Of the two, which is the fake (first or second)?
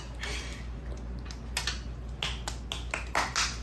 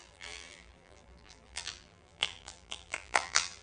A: second